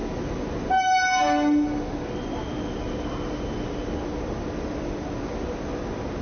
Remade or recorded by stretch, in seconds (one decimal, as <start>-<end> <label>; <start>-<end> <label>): 0.0-6.2 recorded